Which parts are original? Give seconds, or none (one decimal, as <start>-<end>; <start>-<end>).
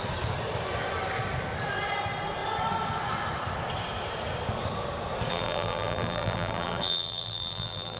0.0-5.3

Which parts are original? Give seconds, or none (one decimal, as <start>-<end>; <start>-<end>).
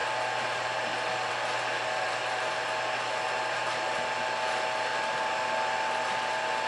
0.0-4.9; 6.3-6.7